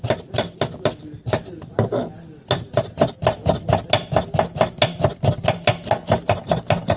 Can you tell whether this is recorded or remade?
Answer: recorded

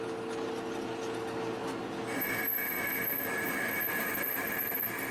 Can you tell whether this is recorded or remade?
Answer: recorded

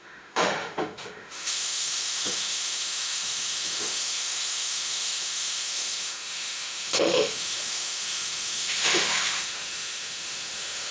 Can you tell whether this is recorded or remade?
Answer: remade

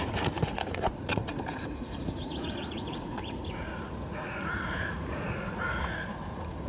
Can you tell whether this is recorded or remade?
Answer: remade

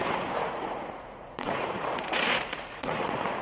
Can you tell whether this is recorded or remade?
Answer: remade